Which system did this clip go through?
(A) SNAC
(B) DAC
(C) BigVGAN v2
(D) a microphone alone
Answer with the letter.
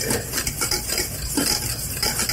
D